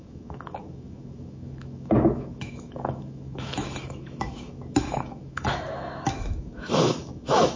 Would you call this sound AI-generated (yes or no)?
yes